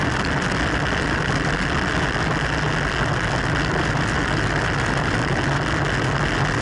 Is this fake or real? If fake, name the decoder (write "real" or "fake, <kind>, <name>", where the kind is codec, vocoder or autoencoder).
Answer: real